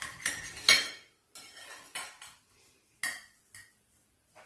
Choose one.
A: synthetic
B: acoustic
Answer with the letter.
B